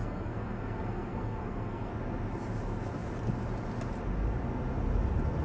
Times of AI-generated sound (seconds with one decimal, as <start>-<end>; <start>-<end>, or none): 0.0-1.9